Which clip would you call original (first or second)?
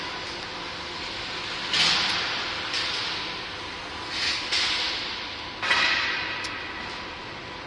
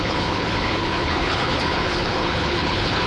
first